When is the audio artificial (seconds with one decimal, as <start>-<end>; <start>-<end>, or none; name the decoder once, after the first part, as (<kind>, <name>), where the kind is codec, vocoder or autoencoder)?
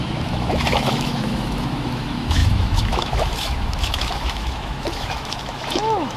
0.0-6.2 (autoencoder, DAC-VAE)